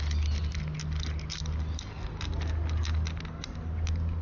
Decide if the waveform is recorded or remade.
recorded